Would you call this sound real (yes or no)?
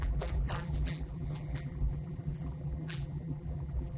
no